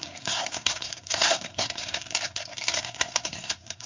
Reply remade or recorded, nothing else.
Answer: remade